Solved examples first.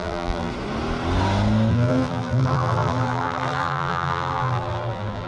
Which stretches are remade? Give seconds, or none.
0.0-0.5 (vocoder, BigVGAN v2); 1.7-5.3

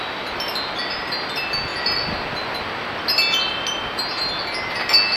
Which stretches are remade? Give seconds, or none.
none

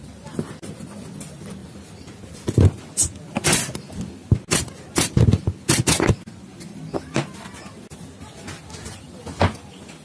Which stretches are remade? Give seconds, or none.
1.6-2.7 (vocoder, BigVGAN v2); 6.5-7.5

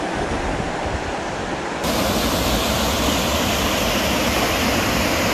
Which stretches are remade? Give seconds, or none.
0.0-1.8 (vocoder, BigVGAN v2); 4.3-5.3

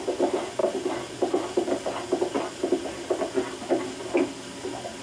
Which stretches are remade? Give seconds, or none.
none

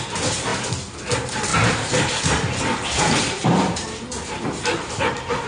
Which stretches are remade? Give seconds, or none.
0.0-0.5 (vocoder, BigVGAN v2); 1.1-3.4; 5.0-5.5